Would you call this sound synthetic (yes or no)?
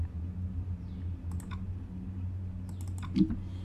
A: no